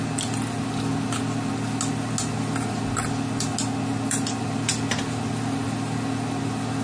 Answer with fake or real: real